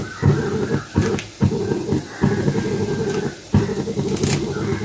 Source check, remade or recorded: recorded